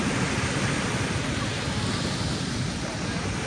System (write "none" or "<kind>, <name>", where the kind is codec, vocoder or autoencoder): none